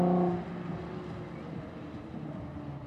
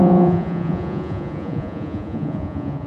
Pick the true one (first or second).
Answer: first